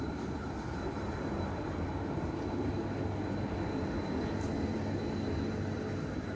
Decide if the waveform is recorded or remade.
recorded